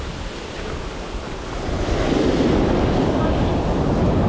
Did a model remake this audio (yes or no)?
no